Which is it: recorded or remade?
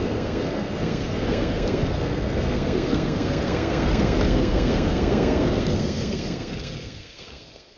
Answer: remade